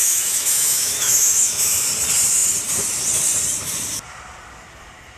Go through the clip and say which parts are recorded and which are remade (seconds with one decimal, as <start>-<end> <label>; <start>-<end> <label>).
0.0-1.9 remade; 1.9-5.2 recorded